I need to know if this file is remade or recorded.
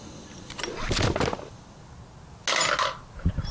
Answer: recorded